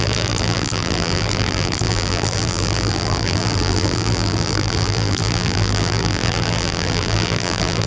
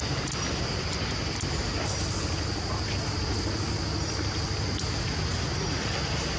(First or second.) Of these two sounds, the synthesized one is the first